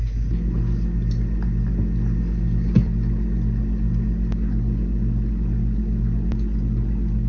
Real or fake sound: real